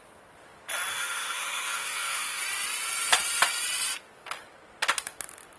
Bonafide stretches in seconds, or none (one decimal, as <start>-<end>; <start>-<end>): 0.0-0.9; 2.4-5.6